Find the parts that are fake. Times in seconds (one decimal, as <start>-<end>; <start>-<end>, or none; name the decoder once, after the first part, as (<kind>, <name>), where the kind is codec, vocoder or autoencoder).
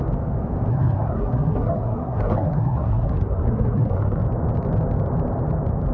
0.7-4.2 (codec, SNAC)